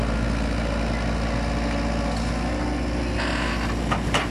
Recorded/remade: recorded